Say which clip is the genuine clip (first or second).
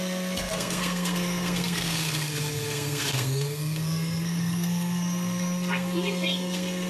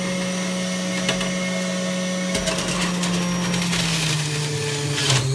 second